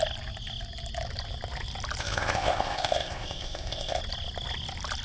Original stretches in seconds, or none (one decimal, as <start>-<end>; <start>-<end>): 0.0-2.0; 4.0-5.0